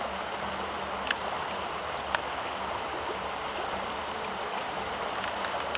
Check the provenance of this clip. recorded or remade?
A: recorded